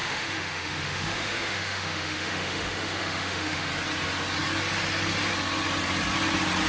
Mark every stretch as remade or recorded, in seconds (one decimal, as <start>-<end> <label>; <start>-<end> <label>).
0.0-3.7 remade; 3.7-6.7 recorded